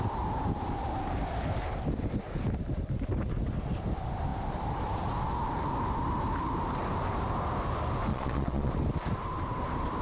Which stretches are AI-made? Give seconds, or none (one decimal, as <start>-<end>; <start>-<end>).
8.1-8.7